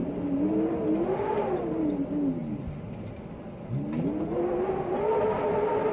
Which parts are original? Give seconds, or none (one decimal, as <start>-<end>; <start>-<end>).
0.0-5.9